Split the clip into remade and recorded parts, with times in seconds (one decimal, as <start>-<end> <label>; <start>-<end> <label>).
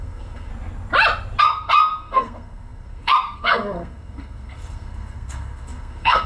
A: 0.0-0.5 remade; 0.5-1.4 recorded; 1.4-6.3 remade